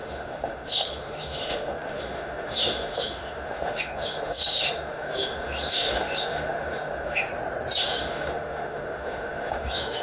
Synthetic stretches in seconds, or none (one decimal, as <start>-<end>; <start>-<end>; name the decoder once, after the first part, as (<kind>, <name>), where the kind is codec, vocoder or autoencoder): 0.0-7.3 (autoencoder, DAC-VAE); 7.8-10.0